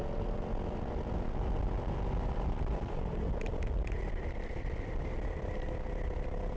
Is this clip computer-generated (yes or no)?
yes